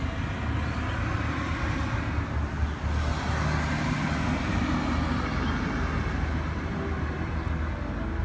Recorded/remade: recorded